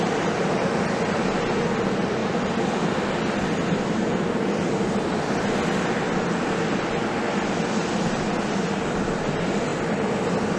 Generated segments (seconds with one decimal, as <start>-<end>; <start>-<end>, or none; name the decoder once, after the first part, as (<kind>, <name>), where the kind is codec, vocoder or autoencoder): none